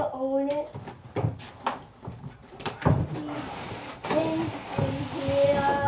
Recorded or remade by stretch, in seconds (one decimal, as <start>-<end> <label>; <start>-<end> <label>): 0.0-2.4 recorded; 2.4-4.2 remade; 4.2-5.9 recorded